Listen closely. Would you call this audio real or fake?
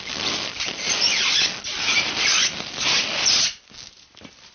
real